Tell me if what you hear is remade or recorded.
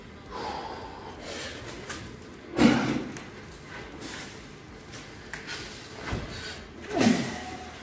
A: recorded